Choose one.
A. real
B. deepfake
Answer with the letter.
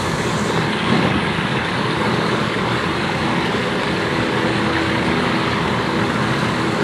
B